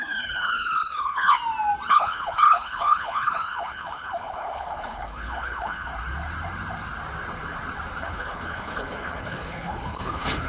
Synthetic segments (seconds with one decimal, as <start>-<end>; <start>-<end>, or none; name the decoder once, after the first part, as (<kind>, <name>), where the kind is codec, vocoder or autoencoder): 0.0-1.4 (codec, HILCodec); 1.9-5.9; 8.0-10.5